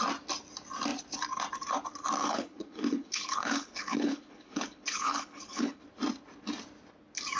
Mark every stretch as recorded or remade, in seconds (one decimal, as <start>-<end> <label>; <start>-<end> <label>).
0.0-2.2 recorded; 2.2-5.8 remade; 5.8-7.4 recorded